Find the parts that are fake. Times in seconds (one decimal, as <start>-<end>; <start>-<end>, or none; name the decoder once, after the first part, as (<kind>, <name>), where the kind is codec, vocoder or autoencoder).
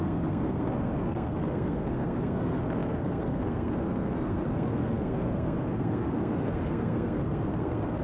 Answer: 0.0-8.0 (codec, SNAC)